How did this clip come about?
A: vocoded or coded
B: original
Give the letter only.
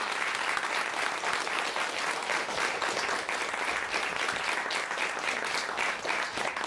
B